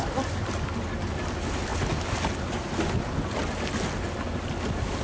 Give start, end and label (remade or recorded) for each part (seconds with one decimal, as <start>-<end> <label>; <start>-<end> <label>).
0.0-5.0 recorded